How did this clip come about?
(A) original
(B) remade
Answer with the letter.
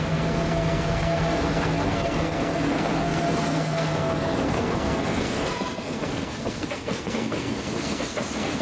B